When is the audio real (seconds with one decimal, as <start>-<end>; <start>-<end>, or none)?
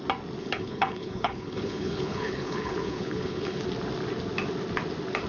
0.0-0.4; 3.6-5.3